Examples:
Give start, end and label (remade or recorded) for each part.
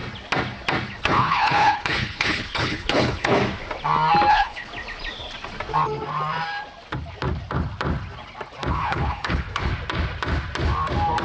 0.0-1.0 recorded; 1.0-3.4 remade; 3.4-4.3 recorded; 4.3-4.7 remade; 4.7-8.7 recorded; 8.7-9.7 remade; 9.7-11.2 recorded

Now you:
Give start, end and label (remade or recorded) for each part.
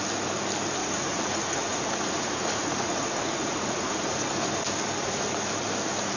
0.0-0.8 recorded; 0.8-4.5 remade; 4.5-6.2 recorded